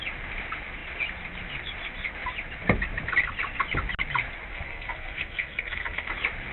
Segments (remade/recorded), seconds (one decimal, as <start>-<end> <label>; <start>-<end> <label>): 0.0-4.5 recorded; 4.5-6.1 remade; 6.1-6.5 recorded